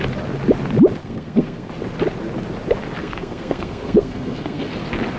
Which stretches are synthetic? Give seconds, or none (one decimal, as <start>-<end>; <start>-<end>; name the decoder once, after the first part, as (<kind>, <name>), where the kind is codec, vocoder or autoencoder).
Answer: 1.0-1.7 (codec, SNAC); 3.0-4.7